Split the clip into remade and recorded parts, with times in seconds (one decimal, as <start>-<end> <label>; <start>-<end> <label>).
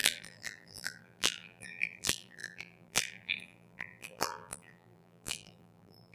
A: 0.0-6.1 remade